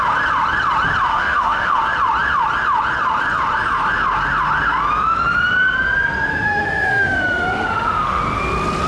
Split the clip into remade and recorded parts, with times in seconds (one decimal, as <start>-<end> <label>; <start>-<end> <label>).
0.0-1.1 recorded; 1.1-1.8 remade; 1.8-6.3 recorded; 6.3-8.2 remade; 8.2-8.9 recorded